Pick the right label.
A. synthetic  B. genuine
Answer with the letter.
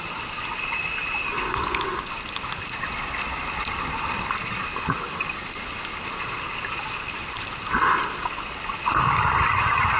B